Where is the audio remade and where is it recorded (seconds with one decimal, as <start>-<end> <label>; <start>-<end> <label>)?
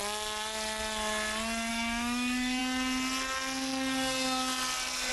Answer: 0.0-1.7 recorded; 1.7-2.6 remade; 2.6-5.1 recorded